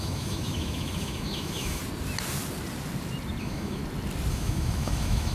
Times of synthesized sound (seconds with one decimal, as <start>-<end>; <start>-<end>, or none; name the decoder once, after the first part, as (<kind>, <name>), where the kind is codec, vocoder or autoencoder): 0.0-1.8 (autoencoder, DAC-VAE); 3.4-3.8; 4.3-5.3